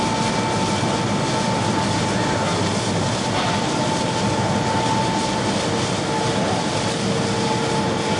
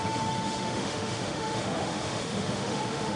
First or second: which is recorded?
first